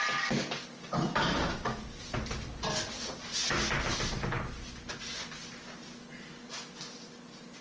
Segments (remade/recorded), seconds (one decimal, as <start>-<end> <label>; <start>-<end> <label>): 0.0-7.6 recorded